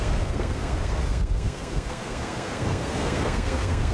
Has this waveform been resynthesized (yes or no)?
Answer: yes